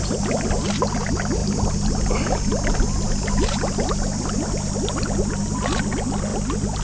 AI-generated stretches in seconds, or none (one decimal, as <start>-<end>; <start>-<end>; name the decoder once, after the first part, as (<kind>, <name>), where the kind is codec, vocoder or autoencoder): none